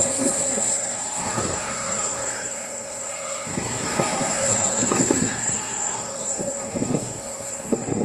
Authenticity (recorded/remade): remade